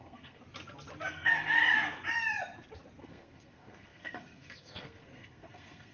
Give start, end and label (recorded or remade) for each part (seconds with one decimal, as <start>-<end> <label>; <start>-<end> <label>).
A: 0.0-0.4 remade; 0.4-1.1 recorded; 1.1-1.6 remade; 1.6-3.0 recorded; 3.0-5.9 remade